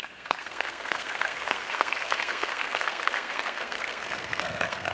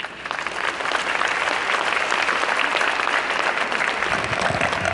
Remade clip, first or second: first